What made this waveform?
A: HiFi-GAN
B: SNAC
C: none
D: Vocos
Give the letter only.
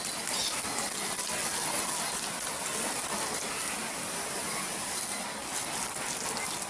C